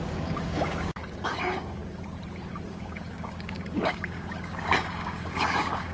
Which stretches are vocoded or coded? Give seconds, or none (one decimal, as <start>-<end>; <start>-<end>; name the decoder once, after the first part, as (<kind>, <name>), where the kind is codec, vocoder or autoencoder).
0.0-1.8 (codec, DAC); 2.7-5.9